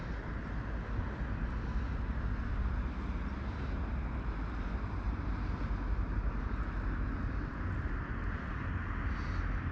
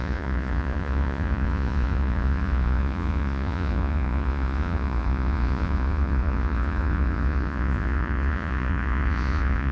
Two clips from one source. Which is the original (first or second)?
first